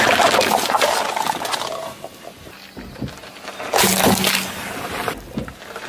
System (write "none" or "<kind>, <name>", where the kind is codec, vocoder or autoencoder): none